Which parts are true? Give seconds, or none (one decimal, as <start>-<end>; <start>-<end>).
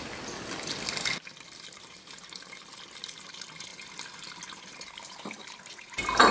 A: 0.0-6.3